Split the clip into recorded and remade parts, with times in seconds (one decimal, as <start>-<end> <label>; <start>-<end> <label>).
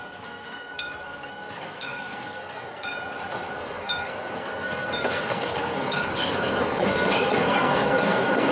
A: 0.0-2.9 remade; 2.9-3.5 recorded; 3.5-8.5 remade